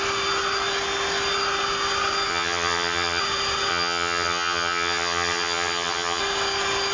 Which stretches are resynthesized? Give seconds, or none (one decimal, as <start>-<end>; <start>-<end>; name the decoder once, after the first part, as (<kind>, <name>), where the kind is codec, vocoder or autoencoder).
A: 2.3-3.2 (vocoder, HiFi-GAN); 3.7-6.2